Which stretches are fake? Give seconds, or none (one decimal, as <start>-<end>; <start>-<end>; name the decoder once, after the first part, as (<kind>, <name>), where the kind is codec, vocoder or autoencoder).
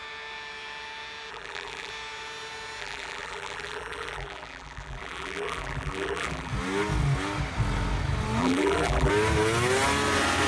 1.3-1.9 (vocoder, BigVGAN v2); 2.8-6.5; 8.4-9.1